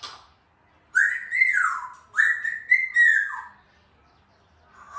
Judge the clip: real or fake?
real